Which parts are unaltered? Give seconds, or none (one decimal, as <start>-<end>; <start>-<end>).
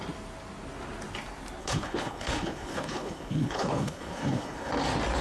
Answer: 0.0-1.6; 4.7-5.2